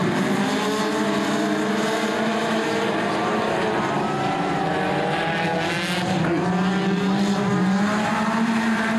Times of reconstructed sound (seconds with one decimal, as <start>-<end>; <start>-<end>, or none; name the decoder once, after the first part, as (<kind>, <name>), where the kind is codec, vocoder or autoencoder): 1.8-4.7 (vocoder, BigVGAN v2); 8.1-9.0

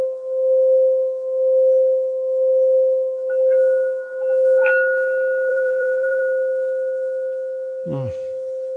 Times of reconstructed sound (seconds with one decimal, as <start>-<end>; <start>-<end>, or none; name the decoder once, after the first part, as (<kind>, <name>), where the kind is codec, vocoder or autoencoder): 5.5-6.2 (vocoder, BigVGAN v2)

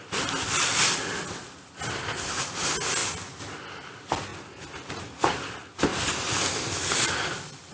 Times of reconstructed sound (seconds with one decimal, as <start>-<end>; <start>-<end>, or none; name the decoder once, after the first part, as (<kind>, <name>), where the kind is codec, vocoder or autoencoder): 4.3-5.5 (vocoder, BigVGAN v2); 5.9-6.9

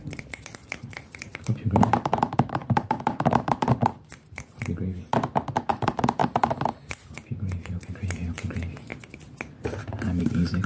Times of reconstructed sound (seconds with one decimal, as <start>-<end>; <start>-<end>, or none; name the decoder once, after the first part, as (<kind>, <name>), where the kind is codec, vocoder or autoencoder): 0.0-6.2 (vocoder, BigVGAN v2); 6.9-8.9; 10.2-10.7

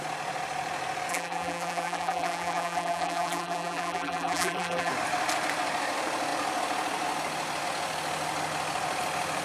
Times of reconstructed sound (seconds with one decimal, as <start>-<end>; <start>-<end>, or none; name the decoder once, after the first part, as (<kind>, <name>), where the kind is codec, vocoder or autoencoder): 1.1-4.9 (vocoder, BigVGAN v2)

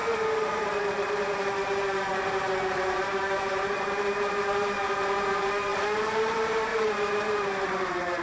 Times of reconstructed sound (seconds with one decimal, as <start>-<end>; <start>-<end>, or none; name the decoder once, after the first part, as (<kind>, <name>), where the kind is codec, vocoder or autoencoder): 0.0-8.2 (vocoder, BigVGAN v2)

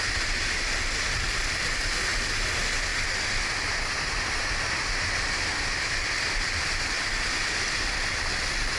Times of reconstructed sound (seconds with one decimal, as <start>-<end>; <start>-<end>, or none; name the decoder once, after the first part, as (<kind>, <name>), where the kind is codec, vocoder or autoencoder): none